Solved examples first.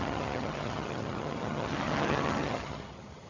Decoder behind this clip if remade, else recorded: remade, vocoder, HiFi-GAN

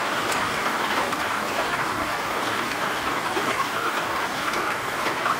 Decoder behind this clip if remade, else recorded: remade, codec, DAC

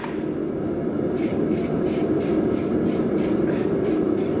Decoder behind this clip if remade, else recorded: recorded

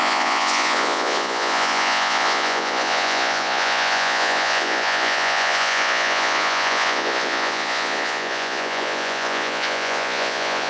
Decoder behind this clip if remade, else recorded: remade, vocoder, Vocos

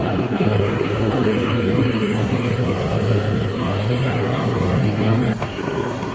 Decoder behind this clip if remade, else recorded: remade, codec, SNAC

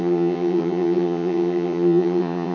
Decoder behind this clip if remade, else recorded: remade, vocoder, HiFi-GAN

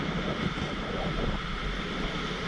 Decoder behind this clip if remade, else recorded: recorded